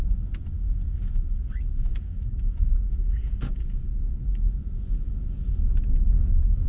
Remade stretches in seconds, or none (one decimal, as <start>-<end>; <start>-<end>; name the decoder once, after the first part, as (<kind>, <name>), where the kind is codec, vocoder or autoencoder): 0.4-1.1 (vocoder, Vocos); 1.9-5.5